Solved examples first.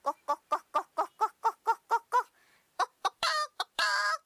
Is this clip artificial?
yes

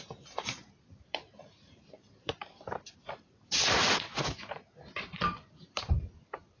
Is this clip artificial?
yes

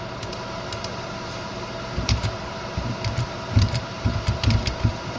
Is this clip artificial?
yes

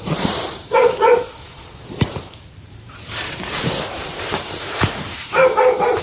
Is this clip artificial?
yes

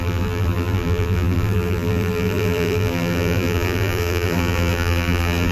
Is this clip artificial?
yes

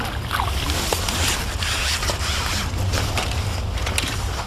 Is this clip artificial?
no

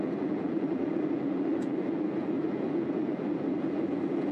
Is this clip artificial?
yes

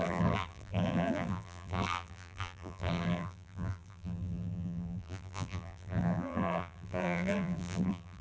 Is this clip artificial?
yes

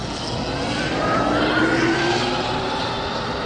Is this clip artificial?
no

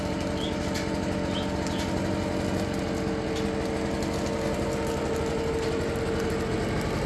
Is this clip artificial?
no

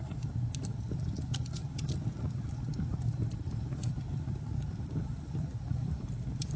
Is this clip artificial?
yes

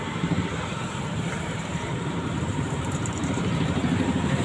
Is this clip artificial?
yes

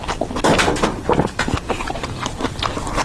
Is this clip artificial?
no